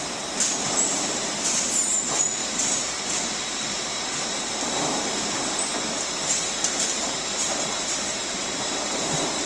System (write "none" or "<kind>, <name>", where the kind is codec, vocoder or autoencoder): vocoder, BigVGAN v2